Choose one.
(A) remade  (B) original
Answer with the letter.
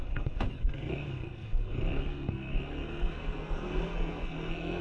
A